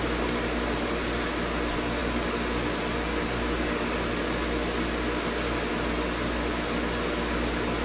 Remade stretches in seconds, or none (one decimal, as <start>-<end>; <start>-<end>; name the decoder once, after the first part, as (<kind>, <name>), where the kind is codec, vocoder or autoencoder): none